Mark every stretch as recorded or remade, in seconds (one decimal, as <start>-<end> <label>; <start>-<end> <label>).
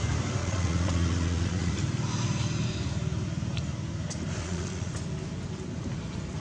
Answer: 0.0-0.4 recorded; 0.4-1.7 remade; 1.7-4.4 recorded; 4.4-4.9 remade; 4.9-6.4 recorded